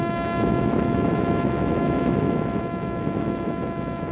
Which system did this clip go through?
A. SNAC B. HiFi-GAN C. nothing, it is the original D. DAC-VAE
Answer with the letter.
D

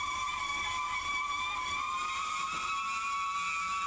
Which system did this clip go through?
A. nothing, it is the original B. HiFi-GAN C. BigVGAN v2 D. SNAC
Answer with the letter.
C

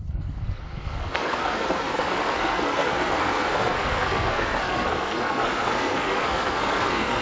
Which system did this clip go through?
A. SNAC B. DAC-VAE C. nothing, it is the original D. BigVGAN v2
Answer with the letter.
A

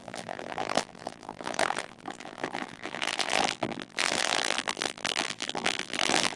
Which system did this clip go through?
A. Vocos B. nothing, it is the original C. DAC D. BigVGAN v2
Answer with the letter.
D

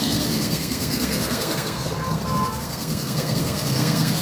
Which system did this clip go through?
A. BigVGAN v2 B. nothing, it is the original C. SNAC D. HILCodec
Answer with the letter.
C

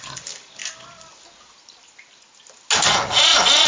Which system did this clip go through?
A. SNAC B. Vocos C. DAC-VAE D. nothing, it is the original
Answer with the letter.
D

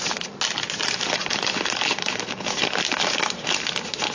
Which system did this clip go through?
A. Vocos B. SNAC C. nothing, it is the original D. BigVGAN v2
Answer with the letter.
C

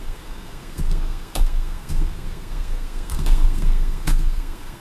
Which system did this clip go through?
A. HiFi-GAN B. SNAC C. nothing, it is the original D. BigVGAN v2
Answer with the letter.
B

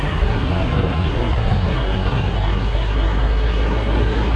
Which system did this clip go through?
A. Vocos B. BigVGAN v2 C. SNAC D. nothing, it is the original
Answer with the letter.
C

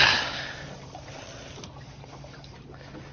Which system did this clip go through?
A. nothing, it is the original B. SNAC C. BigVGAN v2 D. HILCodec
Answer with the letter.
A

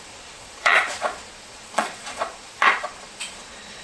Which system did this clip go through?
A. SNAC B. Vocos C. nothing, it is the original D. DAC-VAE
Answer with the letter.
B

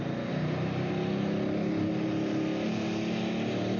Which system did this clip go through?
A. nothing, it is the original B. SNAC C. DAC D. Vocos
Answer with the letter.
A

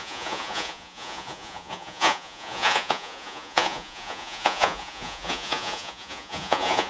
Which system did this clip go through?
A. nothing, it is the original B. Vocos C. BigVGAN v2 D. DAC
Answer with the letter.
B